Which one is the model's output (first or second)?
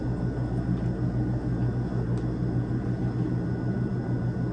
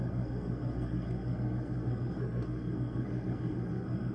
second